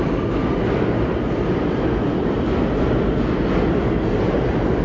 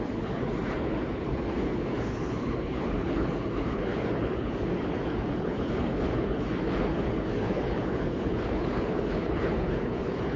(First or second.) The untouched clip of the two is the first